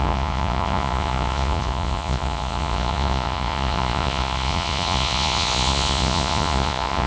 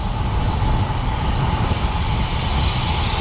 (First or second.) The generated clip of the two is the first